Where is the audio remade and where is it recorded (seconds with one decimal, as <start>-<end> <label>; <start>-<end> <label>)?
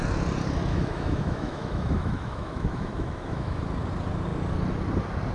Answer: 0.0-0.7 recorded; 0.7-3.6 remade; 3.6-5.3 recorded